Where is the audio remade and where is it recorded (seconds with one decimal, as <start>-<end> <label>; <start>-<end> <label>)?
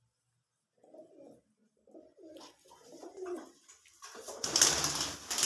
0.0-5.5 recorded